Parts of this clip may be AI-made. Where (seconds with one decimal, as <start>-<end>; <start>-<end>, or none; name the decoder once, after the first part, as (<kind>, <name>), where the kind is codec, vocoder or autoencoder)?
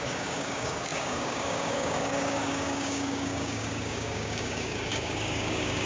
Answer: 0.0-5.9 (codec, DAC)